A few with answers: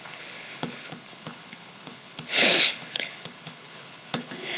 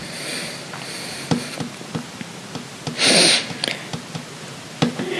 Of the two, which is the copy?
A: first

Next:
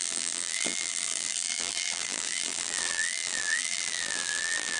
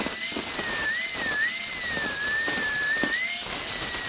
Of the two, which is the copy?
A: first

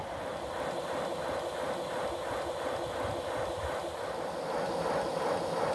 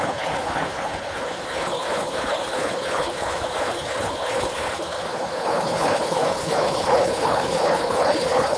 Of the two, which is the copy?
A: second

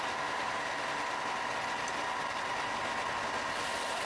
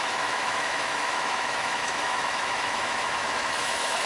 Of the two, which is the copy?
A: second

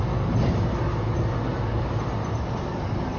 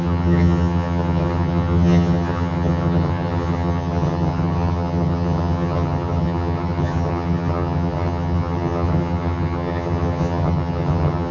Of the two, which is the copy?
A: second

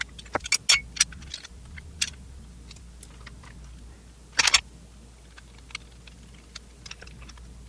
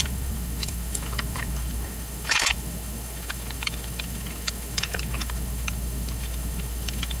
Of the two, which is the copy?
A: second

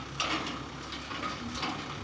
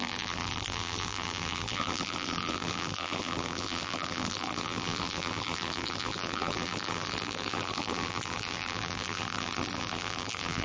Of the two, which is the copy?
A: second